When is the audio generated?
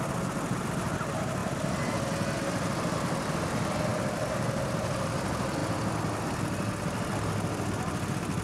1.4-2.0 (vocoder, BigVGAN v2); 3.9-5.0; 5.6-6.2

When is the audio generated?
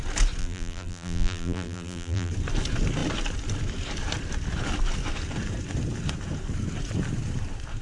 0.4-2.3 (vocoder, BigVGAN v2)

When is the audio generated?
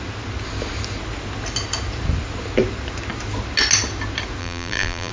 4.4-5.1 (vocoder, BigVGAN v2)